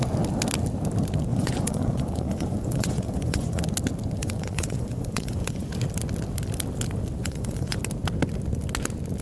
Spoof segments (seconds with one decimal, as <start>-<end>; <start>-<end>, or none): 1.3-3.6; 4.2-5.7; 7.2-7.8